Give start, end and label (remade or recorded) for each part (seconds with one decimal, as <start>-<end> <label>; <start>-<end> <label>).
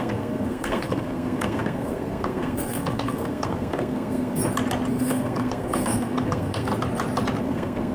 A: 0.0-4.4 remade; 4.4-4.9 recorded; 4.9-6.7 remade; 6.7-7.4 recorded; 7.4-7.9 remade